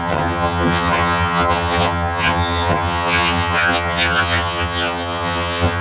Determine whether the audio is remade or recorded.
remade